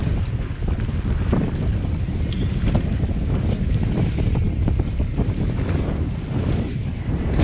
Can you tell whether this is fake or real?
real